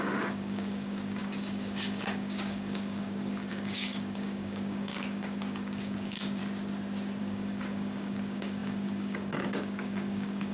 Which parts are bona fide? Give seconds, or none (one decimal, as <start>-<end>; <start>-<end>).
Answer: 6.4-7.2